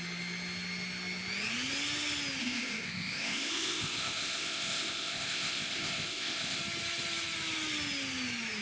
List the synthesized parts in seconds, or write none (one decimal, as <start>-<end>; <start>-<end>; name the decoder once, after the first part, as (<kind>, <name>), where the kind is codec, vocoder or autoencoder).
2.4-6.6 (codec, ZipCodec)